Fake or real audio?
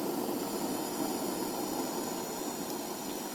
real